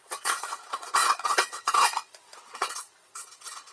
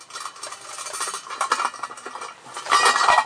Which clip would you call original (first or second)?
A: second